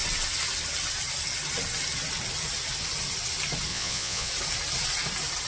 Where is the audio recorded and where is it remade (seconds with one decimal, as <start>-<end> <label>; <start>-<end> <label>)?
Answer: 0.0-3.7 recorded; 3.7-4.3 remade; 4.3-5.5 recorded